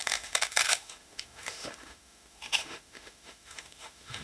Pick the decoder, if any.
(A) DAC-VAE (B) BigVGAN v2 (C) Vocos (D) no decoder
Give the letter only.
A